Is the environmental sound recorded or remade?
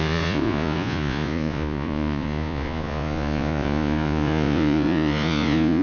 remade